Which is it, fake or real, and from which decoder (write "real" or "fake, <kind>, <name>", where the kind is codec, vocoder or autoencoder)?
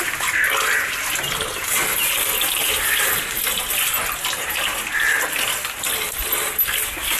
real